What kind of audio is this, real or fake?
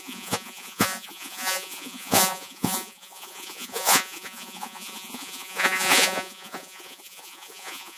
fake